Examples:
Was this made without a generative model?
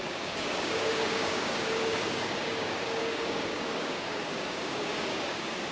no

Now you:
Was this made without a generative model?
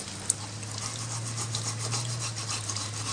yes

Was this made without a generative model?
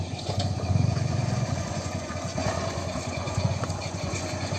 no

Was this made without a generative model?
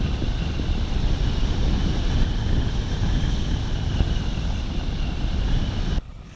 yes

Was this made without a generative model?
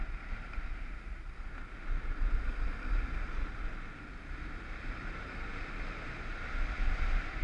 yes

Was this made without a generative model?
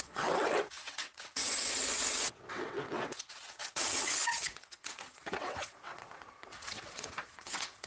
no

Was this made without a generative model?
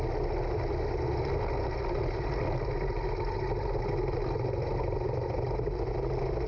yes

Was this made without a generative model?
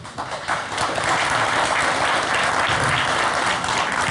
yes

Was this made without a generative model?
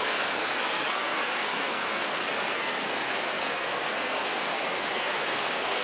no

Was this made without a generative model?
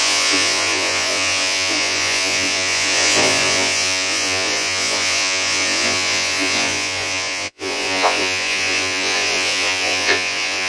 no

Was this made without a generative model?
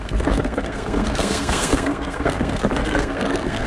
no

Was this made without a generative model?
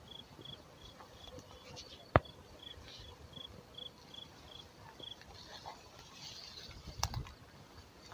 yes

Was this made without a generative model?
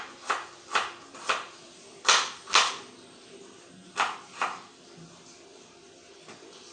yes